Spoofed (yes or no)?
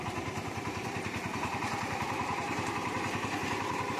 yes